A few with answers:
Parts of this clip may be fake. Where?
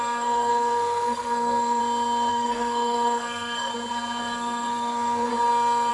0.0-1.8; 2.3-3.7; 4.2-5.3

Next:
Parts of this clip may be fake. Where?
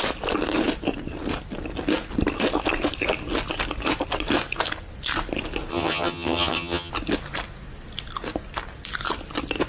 5.7-6.9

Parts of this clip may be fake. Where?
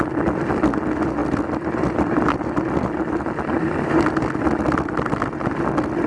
none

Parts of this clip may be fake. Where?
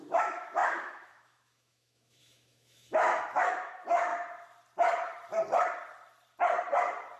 0.0-4.1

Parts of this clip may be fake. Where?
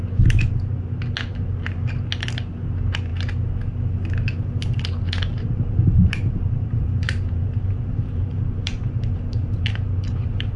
5.3-10.6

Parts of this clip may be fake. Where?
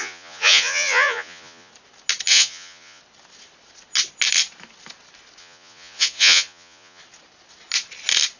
0.0-1.7; 2.3-3.0; 5.4-7.0